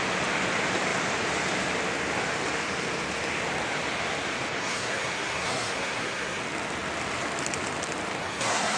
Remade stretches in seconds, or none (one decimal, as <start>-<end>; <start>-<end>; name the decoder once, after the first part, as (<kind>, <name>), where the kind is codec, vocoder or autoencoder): 4.6-6.4 (codec, SNAC); 8.2-8.8

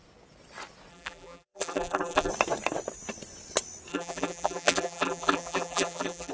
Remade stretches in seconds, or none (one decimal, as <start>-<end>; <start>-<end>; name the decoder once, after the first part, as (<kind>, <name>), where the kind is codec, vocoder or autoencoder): 0.9-2.3 (vocoder, BigVGAN v2); 3.9-6.3

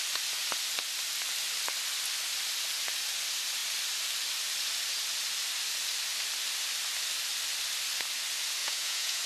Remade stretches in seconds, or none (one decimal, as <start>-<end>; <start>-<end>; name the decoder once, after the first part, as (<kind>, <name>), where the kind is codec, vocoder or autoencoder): 8.6-9.3 (vocoder, Vocos)

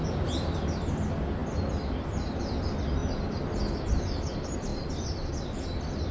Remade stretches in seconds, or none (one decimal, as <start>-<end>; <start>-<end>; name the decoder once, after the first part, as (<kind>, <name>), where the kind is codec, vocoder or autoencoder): 1.4-2.4 (vocoder, BigVGAN v2); 4.7-5.3

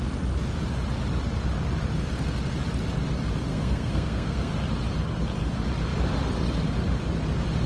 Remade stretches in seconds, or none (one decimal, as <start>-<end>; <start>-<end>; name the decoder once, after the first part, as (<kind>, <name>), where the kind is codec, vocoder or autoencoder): 3.5-4.5 (codec, SNAC)

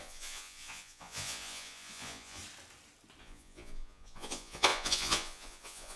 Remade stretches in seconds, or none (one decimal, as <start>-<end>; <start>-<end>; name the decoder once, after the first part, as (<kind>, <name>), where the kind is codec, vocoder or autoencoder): 0.0-2.4 (vocoder, Vocos); 3.2-6.0

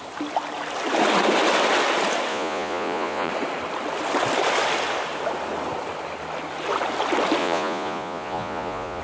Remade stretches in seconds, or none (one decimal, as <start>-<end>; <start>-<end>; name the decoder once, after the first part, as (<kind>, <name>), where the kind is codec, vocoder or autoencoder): 2.3-3.3 (vocoder, Vocos); 7.4-9.0

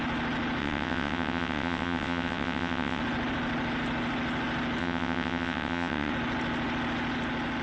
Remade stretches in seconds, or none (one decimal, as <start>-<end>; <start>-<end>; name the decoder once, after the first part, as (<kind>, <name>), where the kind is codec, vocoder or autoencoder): 0.6-3.0 (vocoder, WaveNeXt); 4.8-6.1